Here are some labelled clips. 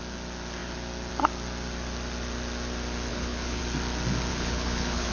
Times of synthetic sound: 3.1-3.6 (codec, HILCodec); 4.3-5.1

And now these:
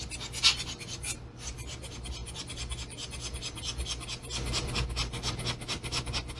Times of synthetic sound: none

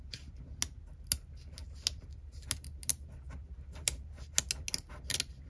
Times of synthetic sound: none